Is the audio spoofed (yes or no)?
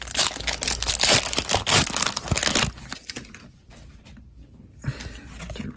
no